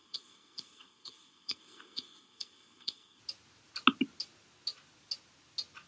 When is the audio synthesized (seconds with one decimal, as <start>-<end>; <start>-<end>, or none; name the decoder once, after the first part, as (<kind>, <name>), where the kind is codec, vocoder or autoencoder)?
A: 0.0-3.2 (codec, SNAC)